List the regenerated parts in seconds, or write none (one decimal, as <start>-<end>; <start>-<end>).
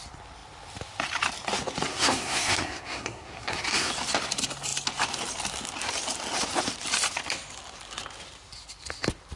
1.9-3.9